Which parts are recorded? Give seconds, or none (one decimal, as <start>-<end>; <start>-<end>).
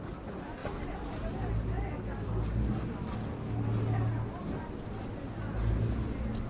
0.0-6.5